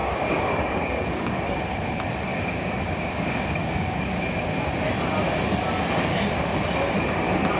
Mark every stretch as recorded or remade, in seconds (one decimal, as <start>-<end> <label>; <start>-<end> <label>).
0.0-1.6 remade; 1.6-2.3 recorded; 2.3-4.2 remade; 4.2-7.6 recorded